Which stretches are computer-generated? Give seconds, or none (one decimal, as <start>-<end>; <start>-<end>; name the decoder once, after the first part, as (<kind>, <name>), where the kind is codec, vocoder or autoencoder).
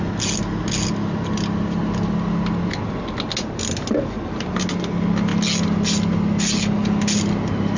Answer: none